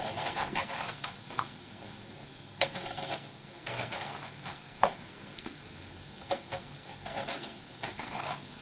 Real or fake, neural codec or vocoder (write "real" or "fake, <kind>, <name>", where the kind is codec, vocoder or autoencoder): fake, codec, SNAC